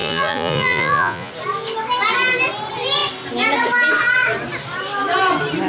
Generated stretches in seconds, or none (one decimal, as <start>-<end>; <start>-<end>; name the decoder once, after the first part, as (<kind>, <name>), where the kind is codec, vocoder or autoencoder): 0.0-1.3 (vocoder, Vocos)